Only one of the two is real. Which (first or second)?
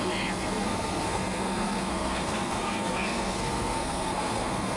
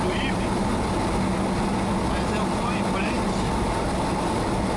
second